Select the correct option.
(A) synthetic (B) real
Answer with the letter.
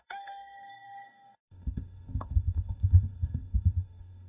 A